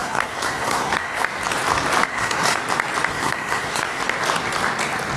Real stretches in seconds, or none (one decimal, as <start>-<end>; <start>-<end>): 1.2-2.1; 2.6-3.1; 4.0-5.2